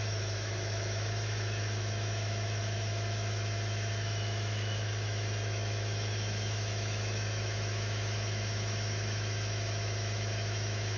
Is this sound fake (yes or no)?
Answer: yes